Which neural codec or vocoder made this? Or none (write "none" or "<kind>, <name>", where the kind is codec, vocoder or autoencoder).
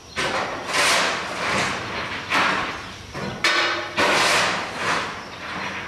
none